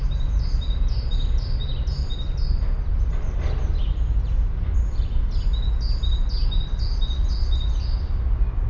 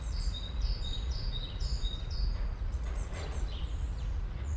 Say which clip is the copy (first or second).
second